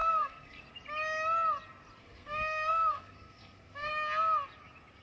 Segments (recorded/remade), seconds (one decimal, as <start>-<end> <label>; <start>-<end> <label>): 0.0-0.6 remade; 0.6-2.0 recorded; 2.0-3.9 remade; 3.9-5.0 recorded